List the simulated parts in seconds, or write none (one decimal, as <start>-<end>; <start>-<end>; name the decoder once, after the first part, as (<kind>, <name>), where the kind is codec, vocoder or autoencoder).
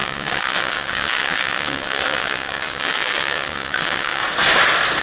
0.0-4.2 (vocoder, WaveNeXt)